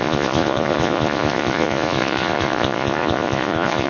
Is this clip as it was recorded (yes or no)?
no